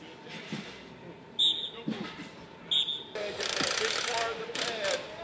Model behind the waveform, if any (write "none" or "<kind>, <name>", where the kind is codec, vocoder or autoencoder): none